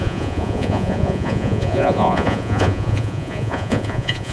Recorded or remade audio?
remade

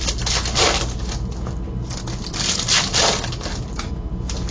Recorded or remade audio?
recorded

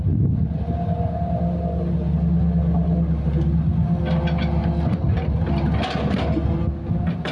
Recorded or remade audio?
recorded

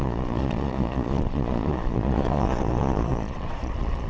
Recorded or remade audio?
remade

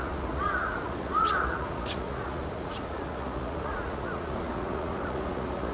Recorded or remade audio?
remade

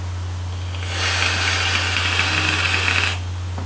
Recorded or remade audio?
recorded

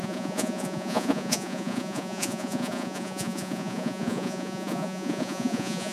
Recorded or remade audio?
remade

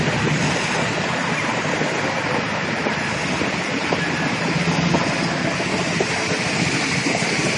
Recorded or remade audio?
recorded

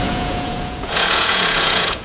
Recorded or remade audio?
remade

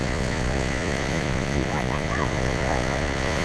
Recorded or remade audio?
remade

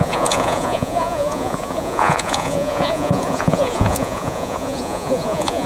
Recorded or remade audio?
remade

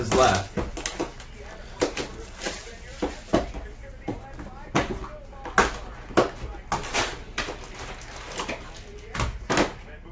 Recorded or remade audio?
recorded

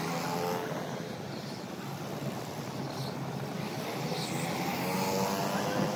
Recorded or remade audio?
recorded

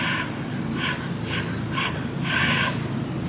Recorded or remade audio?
recorded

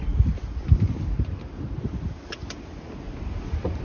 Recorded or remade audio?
recorded